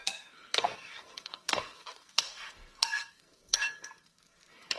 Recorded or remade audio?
remade